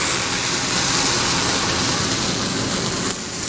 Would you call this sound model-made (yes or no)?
no